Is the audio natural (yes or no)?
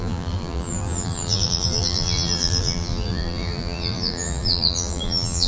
no